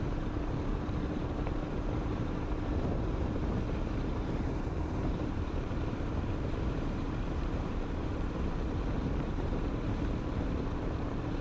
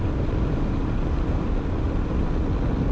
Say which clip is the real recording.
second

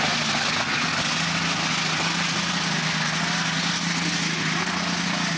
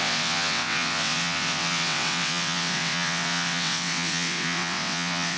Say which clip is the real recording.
first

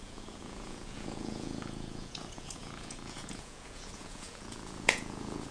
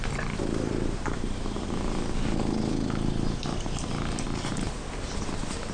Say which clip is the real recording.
second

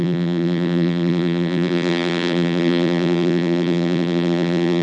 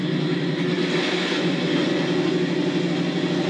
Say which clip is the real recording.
second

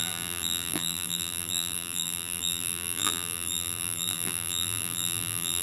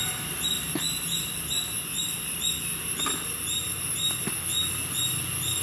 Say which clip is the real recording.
second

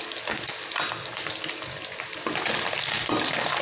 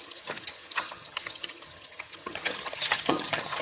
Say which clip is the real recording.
first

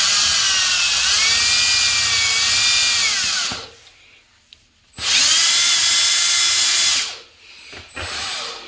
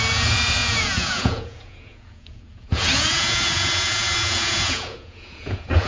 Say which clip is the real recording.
first